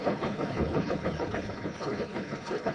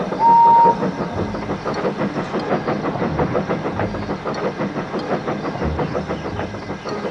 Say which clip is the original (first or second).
second